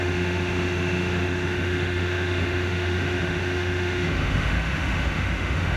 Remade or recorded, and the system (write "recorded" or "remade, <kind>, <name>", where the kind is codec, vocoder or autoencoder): remade, autoencoder, DAC-VAE